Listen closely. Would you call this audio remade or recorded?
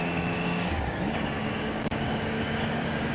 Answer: remade